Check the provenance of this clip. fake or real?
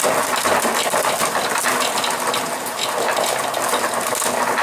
real